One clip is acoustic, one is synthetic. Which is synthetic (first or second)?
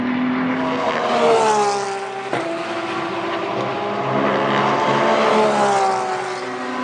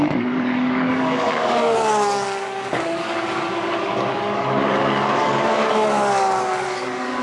second